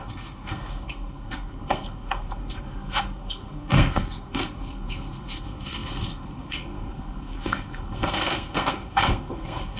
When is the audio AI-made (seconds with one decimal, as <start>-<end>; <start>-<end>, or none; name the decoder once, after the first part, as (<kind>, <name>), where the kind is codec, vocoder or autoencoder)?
0.0-9.8 (codec, SNAC)